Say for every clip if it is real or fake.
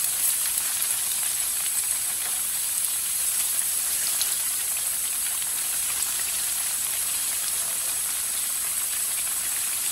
fake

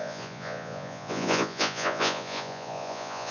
fake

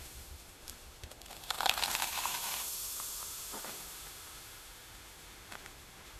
fake